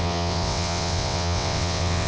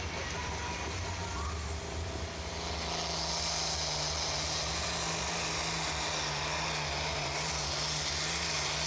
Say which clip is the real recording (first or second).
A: second